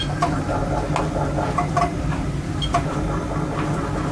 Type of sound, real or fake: real